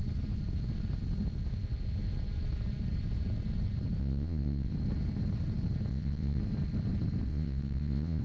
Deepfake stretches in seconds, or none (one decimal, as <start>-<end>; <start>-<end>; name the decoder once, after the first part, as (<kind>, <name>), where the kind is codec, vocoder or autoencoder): 4.0-4.7 (vocoder, Vocos); 5.9-6.4; 7.3-8.2